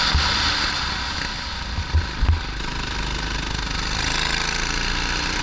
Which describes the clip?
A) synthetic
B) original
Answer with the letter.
B